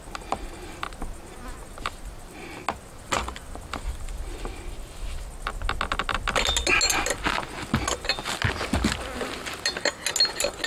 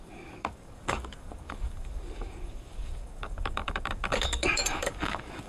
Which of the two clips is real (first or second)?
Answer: first